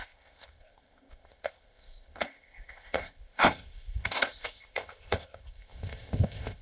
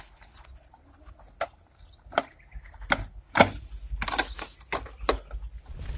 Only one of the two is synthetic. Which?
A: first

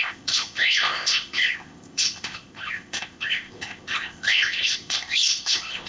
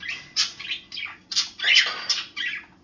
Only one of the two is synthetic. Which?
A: first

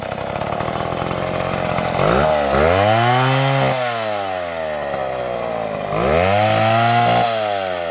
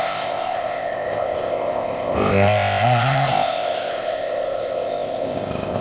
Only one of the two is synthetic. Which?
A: second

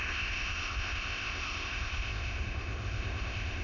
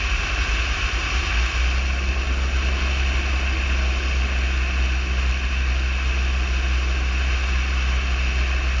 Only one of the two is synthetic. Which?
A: first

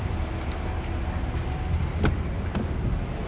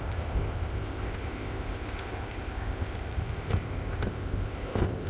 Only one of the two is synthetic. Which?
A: second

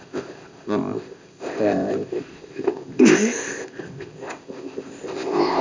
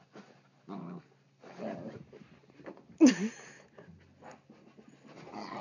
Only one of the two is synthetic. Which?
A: first